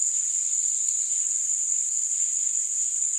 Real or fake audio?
real